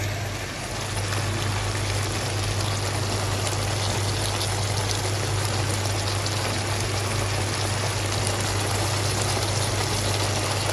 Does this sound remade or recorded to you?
recorded